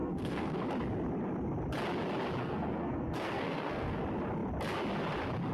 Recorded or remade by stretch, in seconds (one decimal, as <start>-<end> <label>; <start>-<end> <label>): 0.0-0.6 remade; 0.6-2.4 recorded; 2.4-4.0 remade; 4.0-5.5 recorded

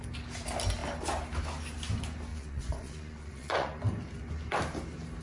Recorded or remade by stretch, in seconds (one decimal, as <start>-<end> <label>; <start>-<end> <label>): 0.0-2.3 recorded; 2.3-3.8 remade; 3.8-5.2 recorded

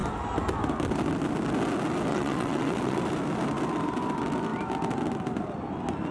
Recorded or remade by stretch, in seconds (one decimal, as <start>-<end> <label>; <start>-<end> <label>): 0.0-2.1 recorded; 2.1-3.0 remade; 3.0-6.1 recorded

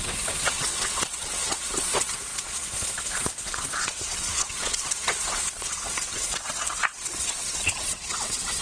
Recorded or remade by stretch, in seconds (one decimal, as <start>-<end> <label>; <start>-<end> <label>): 0.0-8.6 remade

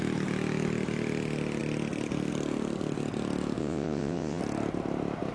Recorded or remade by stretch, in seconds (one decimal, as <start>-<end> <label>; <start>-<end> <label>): 0.0-3.6 recorded; 3.6-4.4 remade; 4.4-5.3 recorded

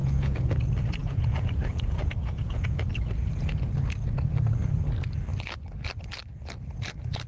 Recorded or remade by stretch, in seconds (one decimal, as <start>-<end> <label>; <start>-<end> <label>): 0.0-0.5 remade; 0.5-1.0 recorded; 1.0-2.8 remade; 2.8-7.3 recorded

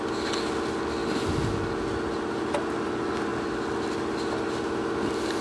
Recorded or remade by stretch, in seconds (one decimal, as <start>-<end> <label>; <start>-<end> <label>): 0.0-5.4 recorded